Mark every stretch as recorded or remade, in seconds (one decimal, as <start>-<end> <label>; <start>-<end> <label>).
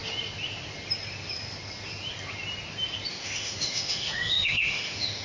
0.0-3.1 recorded; 3.1-5.2 remade